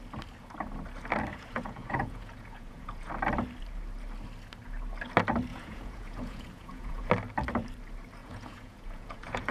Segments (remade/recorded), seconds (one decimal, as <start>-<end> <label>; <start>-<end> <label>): 0.0-1.3 recorded; 1.3-3.1 remade; 3.1-5.5 recorded; 5.5-7.1 remade; 7.1-8.2 recorded; 8.2-9.5 remade